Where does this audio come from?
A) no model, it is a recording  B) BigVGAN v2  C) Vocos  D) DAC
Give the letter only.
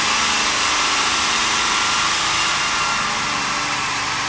A